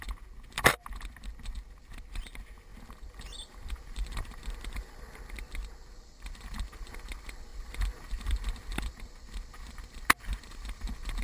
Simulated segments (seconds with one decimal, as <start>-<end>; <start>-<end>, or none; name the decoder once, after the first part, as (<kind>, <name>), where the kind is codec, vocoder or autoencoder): 2.7-5.2 (vocoder, BigVGAN v2); 7.5-9.0